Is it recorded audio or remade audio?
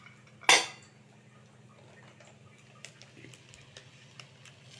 recorded